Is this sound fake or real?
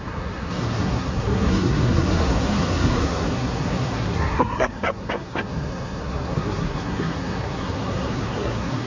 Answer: fake